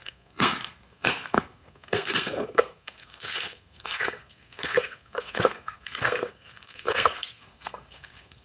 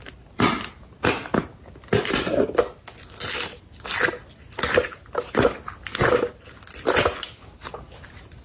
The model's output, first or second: first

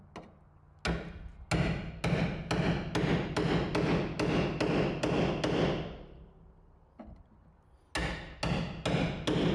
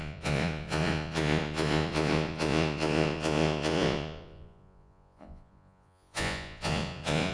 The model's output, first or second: second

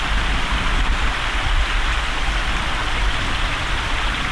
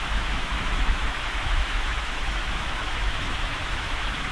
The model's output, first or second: second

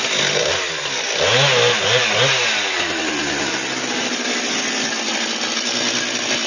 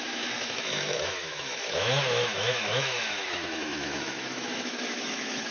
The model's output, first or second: second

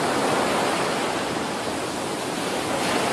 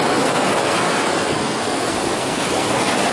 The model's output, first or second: second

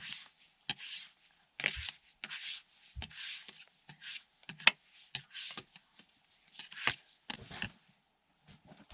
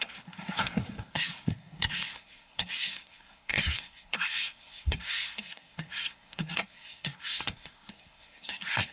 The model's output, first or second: second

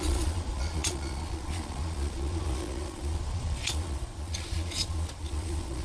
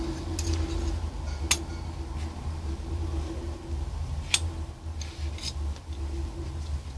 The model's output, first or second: first